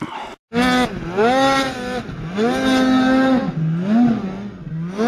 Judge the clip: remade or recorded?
recorded